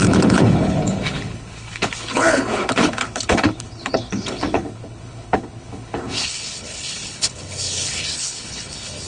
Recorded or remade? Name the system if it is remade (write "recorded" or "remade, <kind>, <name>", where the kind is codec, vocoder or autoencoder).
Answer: remade, codec, HILCodec